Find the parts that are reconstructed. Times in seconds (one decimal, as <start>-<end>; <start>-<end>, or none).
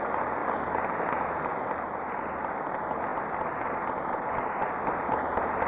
none